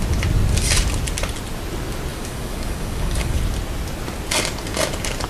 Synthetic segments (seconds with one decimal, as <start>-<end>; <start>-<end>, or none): 2.1-3.4